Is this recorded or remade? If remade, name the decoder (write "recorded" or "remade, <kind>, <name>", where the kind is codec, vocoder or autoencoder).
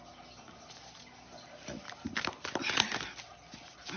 recorded